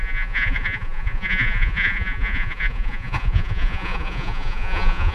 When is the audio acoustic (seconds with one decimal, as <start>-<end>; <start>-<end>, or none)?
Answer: none